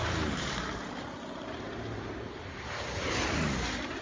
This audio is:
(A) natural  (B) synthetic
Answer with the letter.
B